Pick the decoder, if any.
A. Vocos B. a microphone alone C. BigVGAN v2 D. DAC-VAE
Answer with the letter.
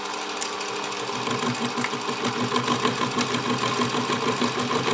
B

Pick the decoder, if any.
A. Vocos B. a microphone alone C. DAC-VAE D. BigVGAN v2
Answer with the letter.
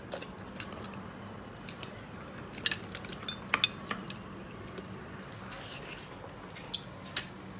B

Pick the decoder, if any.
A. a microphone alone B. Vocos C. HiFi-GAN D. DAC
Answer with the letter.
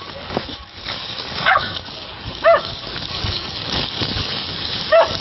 D